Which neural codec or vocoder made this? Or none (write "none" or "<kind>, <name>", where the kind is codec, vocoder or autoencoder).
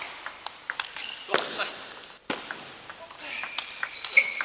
none